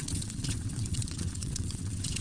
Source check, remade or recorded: remade